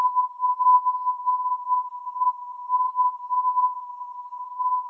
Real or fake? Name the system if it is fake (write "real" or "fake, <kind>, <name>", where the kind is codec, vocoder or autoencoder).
fake, codec, SNAC